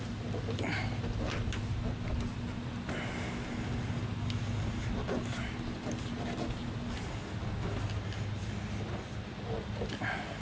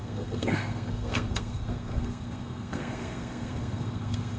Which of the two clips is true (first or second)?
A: first